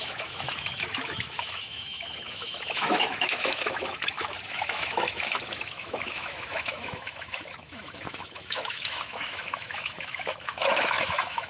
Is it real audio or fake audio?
fake